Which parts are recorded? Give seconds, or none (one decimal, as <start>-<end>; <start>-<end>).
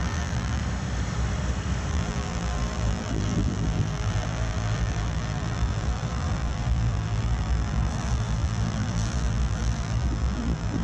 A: 0.6-1.9